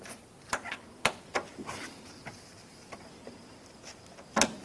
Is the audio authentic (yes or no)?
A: yes